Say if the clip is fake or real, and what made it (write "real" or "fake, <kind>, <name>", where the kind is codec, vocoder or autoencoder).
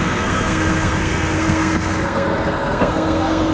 fake, codec, SNAC